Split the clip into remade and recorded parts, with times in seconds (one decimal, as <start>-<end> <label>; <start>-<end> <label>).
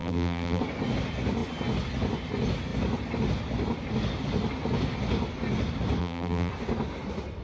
0.0-0.6 remade; 0.6-6.0 recorded; 6.0-6.5 remade; 6.5-7.4 recorded